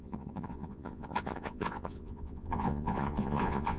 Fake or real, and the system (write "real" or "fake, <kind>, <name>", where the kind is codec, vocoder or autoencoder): fake, vocoder, Vocos